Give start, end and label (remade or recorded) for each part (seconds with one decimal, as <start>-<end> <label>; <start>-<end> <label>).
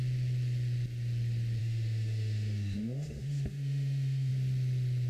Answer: 0.0-1.6 recorded; 1.6-4.3 remade; 4.3-5.1 recorded